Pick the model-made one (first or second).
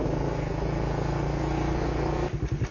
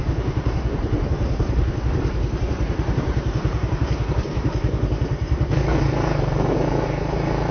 second